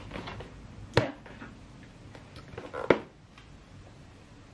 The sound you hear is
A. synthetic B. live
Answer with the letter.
B